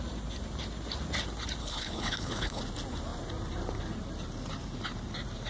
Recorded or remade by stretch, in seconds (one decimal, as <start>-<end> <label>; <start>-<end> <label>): 0.0-1.6 recorded; 1.6-2.6 remade; 2.6-5.5 recorded